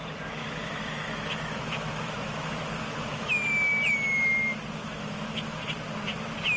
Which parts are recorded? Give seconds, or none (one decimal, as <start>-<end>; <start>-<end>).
0.0-0.4; 3.3-4.8; 5.6-6.6